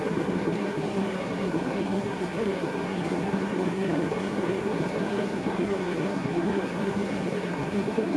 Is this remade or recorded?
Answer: remade